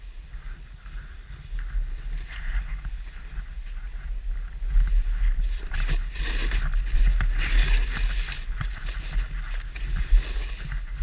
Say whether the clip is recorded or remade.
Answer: recorded